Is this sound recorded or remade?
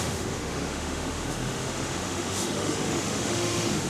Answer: remade